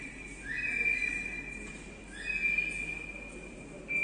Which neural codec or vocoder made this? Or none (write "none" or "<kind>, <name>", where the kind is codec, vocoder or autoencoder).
none